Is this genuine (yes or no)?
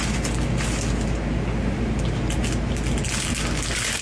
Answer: yes